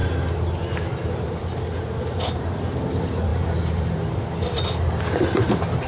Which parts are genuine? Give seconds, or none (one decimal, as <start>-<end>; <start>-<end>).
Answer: 0.0-3.3; 4.3-5.9